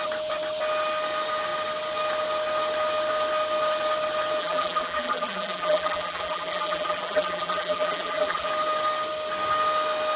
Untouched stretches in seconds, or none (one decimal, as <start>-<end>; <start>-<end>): 0.0-4.4; 8.5-10.2